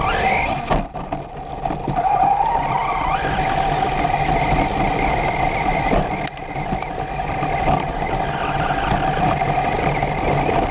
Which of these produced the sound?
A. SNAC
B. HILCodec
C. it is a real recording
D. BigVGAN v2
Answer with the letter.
C